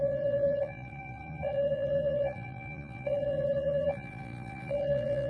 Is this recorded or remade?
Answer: remade